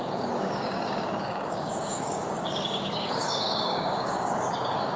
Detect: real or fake fake